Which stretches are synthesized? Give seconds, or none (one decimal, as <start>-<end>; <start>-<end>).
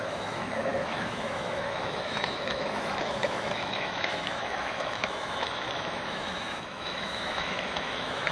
0.0-8.3